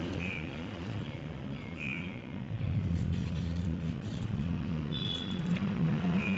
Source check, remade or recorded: remade